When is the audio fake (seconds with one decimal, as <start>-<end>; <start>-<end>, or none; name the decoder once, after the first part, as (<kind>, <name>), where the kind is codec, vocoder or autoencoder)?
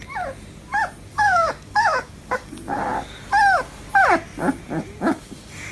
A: 1.1-2.6 (codec, DAC)